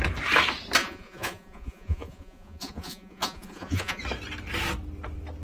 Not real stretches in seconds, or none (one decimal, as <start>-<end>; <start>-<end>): 0.8-4.0